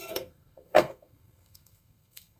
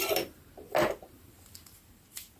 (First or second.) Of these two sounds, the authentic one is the second